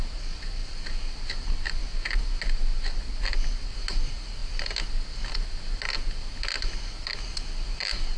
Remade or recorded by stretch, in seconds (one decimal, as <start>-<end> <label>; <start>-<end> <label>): 0.0-8.2 recorded